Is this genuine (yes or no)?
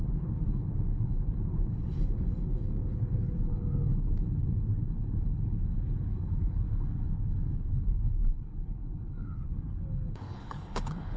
no